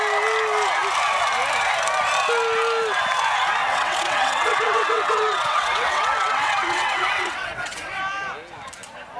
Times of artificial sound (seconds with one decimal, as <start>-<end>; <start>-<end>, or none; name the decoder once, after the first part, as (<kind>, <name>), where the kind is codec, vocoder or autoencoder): 3.6-8.0 (vocoder, WaveNeXt)